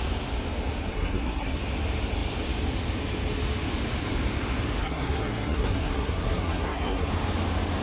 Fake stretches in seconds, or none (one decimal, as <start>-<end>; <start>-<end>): 0.9-1.6; 4.8-7.1